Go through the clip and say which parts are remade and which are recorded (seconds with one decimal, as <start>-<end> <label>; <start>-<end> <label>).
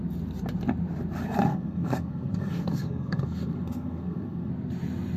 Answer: 0.0-1.5 recorded; 1.5-4.5 remade; 4.5-5.2 recorded